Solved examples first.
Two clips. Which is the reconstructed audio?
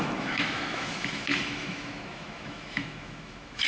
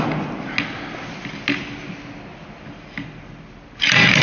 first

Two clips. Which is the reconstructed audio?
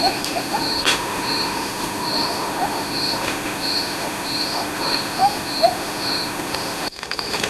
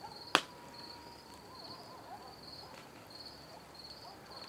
first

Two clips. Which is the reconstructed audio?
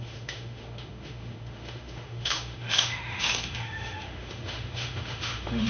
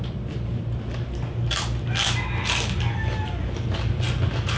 first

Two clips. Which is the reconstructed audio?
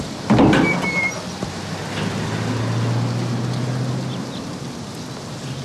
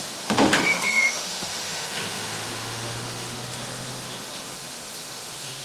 second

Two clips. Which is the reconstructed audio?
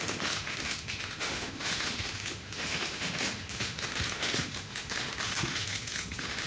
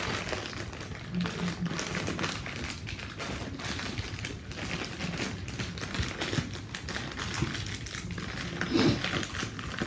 first